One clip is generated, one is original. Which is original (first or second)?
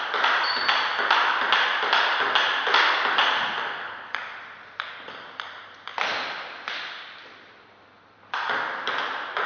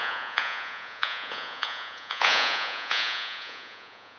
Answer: first